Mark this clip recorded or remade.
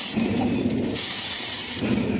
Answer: remade